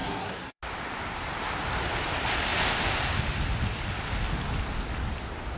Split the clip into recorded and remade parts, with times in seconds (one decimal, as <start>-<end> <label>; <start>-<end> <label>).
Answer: 0.0-0.6 remade; 0.6-5.6 recorded